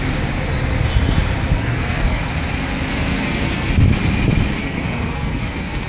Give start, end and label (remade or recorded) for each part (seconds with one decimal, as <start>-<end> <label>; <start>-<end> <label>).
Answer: 0.0-1.6 recorded; 1.6-2.2 remade; 2.2-2.9 recorded; 2.9-3.7 remade; 3.7-4.6 recorded; 4.6-5.9 remade